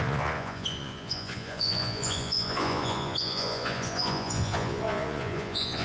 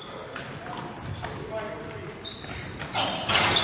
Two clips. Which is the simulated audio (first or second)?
first